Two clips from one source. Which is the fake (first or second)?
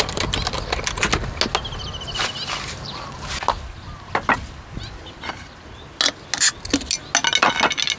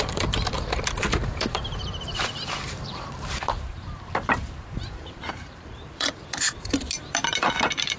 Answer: second